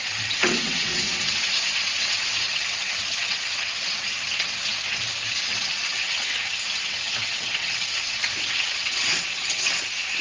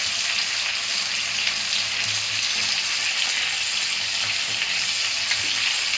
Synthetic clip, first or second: first